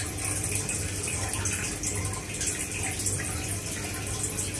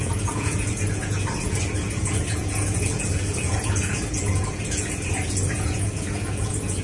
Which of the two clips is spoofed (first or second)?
second